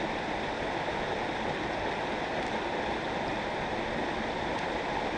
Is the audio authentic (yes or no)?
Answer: yes